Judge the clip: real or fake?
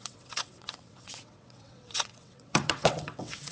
fake